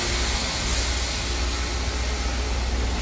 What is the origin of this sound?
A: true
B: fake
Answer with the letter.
A